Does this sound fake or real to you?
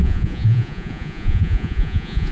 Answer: fake